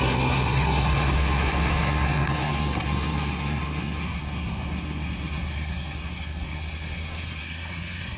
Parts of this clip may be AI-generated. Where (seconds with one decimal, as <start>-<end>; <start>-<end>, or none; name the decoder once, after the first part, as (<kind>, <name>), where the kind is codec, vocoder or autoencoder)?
0.0-8.2 (codec, SNAC)